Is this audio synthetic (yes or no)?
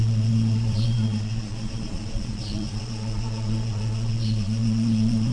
yes